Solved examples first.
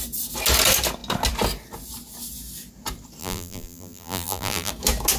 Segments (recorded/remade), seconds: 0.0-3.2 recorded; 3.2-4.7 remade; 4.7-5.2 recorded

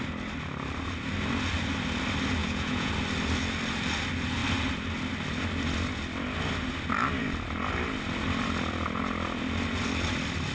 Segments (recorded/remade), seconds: 0.0-2.4 recorded; 2.4-2.9 remade; 2.9-10.5 recorded

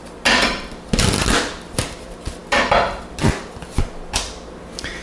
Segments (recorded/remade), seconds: 0.0-5.0 recorded